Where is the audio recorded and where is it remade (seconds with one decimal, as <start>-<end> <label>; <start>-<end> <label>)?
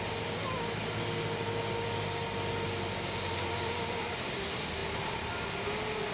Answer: 0.0-6.1 recorded